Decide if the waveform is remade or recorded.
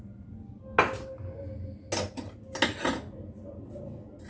recorded